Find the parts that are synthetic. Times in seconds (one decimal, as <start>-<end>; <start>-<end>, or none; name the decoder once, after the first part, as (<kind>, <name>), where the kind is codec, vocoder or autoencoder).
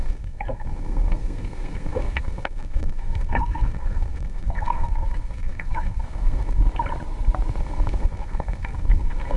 0.0-6.6 (codec, SNAC); 7.6-9.4